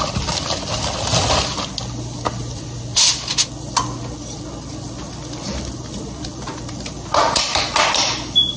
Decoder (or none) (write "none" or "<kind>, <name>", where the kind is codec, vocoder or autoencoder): none